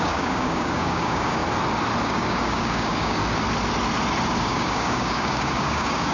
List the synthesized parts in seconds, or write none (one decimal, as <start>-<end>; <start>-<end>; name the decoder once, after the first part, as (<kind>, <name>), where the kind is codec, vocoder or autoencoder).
0.0-1.4 (codec, DAC); 2.0-3.2; 4.4-6.1